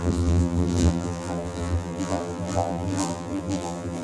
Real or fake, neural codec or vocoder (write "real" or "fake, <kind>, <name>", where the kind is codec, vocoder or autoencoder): fake, vocoder, BigVGAN v2